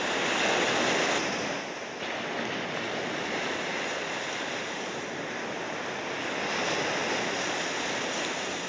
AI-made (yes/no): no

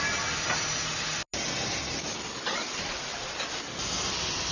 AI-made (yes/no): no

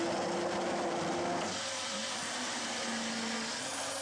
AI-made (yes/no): no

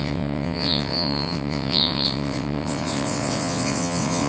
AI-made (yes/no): yes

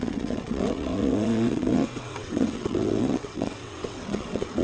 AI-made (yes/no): yes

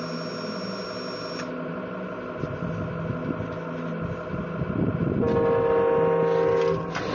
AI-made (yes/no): no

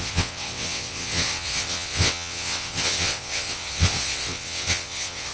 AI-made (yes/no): yes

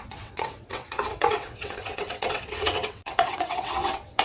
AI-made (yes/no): yes